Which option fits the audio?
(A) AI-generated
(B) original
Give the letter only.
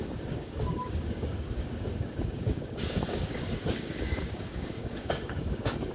A